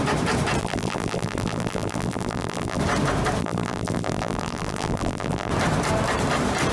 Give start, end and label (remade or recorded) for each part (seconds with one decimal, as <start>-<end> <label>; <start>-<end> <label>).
0.0-0.6 recorded; 0.6-2.8 remade; 2.8-3.4 recorded; 3.4-5.5 remade; 5.5-6.7 recorded